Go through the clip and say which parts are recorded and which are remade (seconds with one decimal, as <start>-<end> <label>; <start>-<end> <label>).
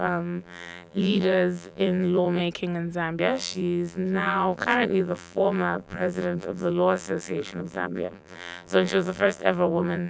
0.0-2.4 remade; 2.4-3.2 recorded; 3.2-10.1 remade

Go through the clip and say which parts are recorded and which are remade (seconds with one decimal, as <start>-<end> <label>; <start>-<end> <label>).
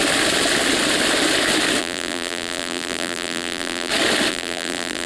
0.0-1.8 recorded; 1.8-3.9 remade; 3.9-4.3 recorded; 4.3-5.1 remade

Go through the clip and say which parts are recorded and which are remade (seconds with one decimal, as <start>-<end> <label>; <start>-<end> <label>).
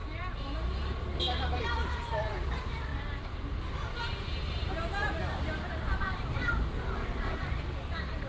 0.0-1.5 recorded; 1.5-2.9 remade; 2.9-6.0 recorded; 6.0-8.3 remade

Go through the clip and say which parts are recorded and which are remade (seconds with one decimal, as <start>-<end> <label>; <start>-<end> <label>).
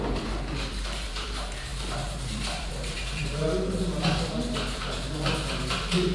0.0-3.4 remade; 3.4-4.1 recorded; 4.1-6.1 remade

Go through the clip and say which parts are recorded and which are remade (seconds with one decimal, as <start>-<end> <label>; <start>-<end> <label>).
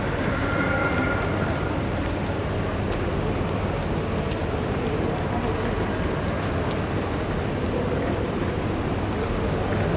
0.0-4.4 recorded; 4.4-5.3 remade; 5.3-10.0 recorded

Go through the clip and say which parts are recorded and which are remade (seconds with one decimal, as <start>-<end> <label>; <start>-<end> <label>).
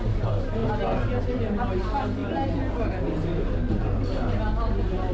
0.0-5.1 recorded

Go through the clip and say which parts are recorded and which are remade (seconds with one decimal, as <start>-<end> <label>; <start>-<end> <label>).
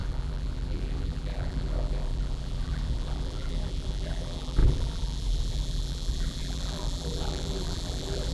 0.0-8.3 remade